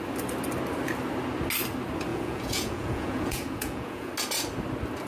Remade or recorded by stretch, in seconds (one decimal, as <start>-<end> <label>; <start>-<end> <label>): 0.0-2.1 recorded; 2.1-4.1 remade; 4.1-5.1 recorded